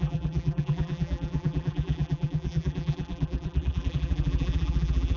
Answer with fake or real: fake